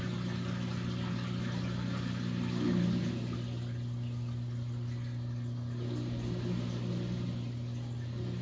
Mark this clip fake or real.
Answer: real